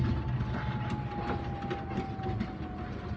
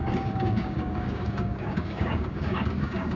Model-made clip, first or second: second